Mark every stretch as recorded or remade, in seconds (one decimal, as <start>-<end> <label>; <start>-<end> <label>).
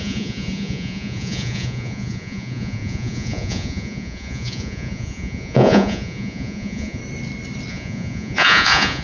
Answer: 0.0-7.0 remade; 7.0-7.7 recorded; 7.7-9.0 remade